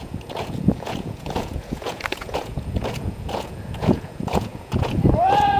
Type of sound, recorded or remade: remade